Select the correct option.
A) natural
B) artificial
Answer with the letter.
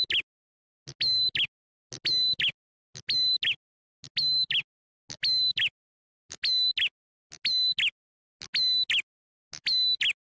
A